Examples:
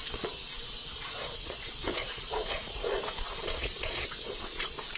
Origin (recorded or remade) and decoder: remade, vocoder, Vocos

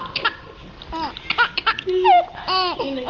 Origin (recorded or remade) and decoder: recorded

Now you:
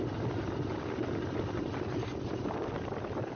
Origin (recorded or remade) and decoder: recorded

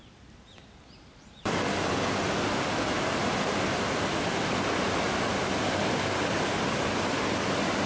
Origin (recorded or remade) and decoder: recorded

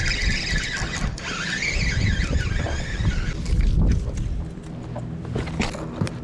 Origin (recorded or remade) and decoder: recorded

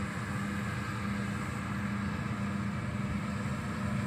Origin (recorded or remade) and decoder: recorded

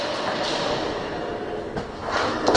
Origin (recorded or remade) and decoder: recorded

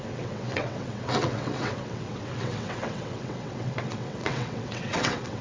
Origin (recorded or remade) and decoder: remade, vocoder, WaveNeXt